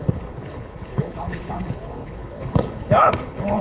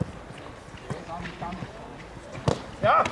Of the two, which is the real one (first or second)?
second